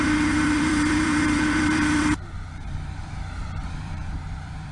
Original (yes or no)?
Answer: no